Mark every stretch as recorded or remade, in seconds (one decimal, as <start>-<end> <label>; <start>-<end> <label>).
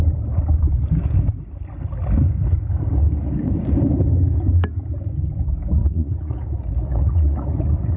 0.0-5.8 recorded; 5.8-8.0 remade